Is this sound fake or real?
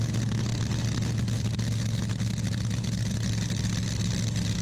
real